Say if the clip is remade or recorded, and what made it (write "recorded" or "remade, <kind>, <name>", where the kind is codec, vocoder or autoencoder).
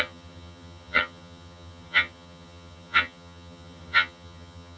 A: remade, vocoder, HiFi-GAN